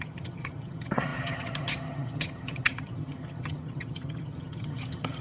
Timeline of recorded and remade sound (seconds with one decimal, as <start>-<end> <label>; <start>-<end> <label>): 0.0-5.2 remade